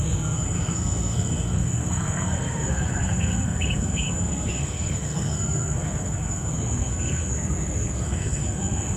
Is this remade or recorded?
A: remade